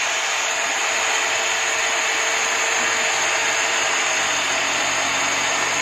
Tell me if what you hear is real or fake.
real